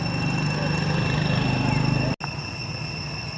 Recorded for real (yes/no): yes